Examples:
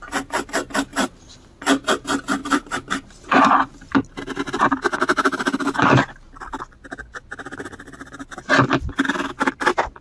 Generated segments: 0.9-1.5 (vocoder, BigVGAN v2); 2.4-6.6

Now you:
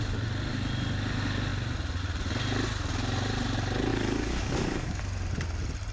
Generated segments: 3.9-5.0 (codec, DAC)

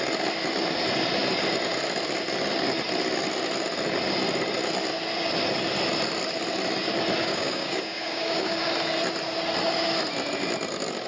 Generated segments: 7.2-8.6 (codec, DAC)

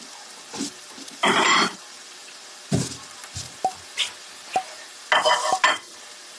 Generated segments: 0.0-2.2 (vocoder, BigVGAN v2); 4.5-4.9; 6.0-6.4

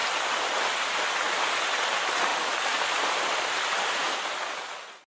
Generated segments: 2.3-4.1 (vocoder, BigVGAN v2)